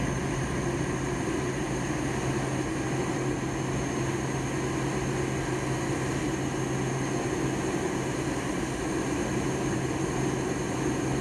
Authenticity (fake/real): real